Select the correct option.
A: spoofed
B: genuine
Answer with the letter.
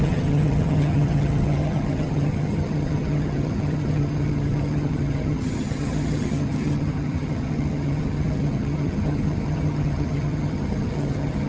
A